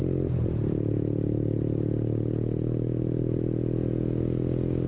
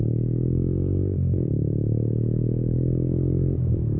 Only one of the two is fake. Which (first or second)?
second